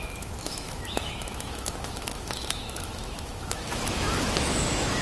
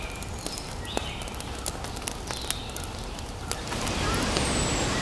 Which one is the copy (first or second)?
first